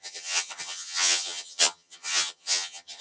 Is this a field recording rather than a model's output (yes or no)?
no